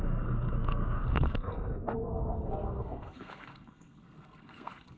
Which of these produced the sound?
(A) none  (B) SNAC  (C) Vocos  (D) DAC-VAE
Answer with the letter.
B